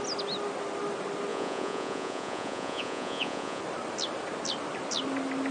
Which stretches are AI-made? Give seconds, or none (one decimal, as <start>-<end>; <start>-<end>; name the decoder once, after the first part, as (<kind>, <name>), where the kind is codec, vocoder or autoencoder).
1.3-3.6 (vocoder, Vocos)